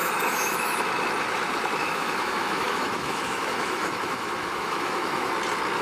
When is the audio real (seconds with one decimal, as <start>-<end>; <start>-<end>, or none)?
0.8-1.8; 5.3-5.8